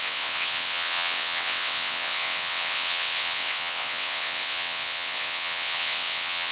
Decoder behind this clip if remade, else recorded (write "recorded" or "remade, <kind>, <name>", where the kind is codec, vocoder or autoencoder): remade, vocoder, WaveNeXt